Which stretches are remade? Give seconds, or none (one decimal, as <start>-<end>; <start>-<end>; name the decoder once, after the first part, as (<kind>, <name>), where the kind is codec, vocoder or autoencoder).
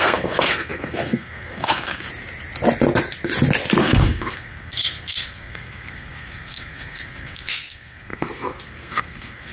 0.0-2.1 (codec, SNAC); 3.8-9.5